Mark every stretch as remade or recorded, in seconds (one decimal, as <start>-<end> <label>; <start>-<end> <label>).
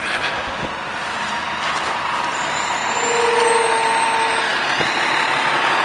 0.0-5.8 recorded